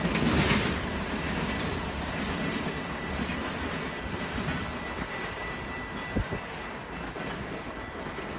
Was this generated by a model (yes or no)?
no